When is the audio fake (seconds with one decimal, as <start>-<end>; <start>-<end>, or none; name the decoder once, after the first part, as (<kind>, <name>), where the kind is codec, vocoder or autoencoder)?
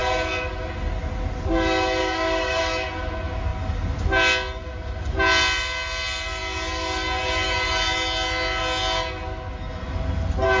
2.0-2.6 (codec, DAC)